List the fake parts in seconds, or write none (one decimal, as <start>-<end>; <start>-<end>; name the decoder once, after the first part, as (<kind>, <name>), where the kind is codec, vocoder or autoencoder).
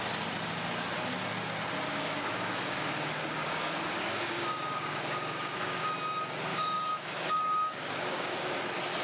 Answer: 1.9-5.8 (codec, DAC); 6.5-8.6